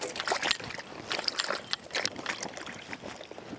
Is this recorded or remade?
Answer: recorded